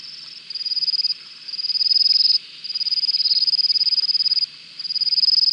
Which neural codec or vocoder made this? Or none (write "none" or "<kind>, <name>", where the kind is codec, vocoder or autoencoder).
none